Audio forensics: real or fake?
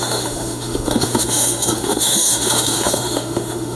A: fake